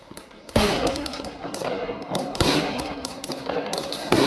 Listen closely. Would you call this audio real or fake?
fake